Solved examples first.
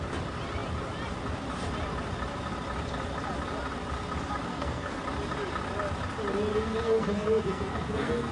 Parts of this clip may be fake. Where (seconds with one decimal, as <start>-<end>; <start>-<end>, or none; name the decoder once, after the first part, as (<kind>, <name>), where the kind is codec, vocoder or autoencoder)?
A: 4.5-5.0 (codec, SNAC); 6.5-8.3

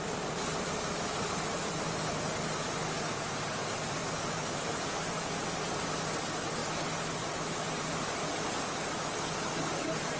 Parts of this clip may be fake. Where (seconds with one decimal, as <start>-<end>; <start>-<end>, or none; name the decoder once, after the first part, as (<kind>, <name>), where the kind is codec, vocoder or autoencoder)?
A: none

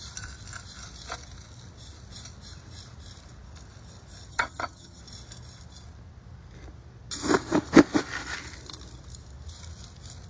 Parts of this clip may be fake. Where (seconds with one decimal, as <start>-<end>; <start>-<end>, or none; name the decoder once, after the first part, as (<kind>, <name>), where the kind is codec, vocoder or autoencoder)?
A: 4.3-5.0 (vocoder, HiFi-GAN)

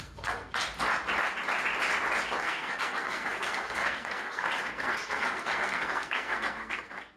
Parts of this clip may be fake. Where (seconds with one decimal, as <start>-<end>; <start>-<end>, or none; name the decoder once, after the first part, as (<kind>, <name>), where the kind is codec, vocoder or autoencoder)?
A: 0.0-0.6 (codec, SNAC); 2.4-7.2

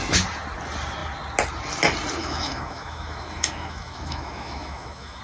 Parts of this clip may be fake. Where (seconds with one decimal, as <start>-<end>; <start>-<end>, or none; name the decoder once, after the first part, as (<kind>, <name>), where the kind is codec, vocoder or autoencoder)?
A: 2.2-5.2 (autoencoder, DAC-VAE)